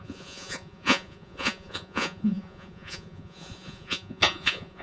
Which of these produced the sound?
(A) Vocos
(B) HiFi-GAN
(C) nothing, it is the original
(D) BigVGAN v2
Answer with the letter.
A